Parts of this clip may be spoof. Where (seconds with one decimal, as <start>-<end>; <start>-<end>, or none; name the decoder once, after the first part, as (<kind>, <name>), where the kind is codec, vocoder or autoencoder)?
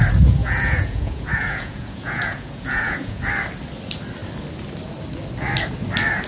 0.4-3.2 (vocoder, Vocos)